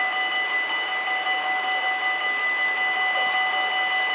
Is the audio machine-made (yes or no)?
no